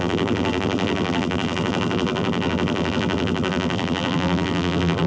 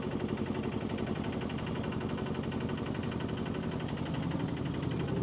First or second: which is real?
second